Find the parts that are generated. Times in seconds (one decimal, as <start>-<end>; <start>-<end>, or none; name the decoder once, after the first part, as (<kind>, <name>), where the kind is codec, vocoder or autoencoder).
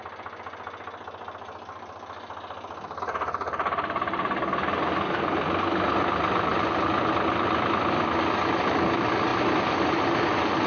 none